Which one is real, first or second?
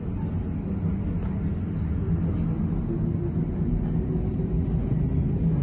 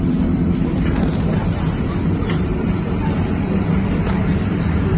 first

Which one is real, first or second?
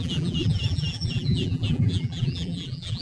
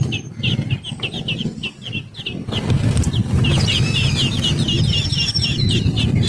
second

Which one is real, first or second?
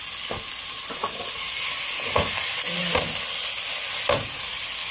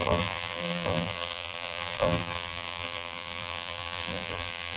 first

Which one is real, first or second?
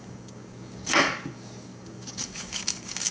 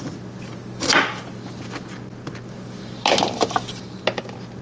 second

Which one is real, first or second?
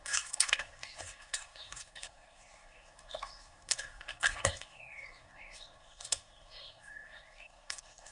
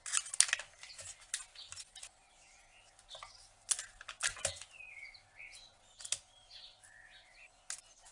second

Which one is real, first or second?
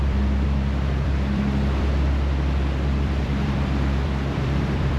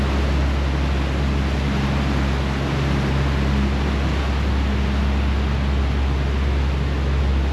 second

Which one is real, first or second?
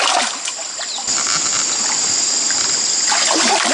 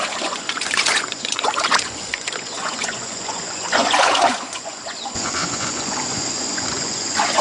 first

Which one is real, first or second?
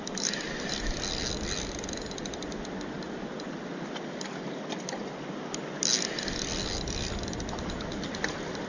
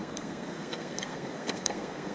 first